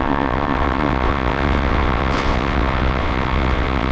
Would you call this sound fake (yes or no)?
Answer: yes